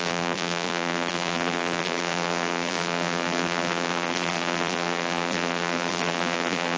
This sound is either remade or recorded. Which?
remade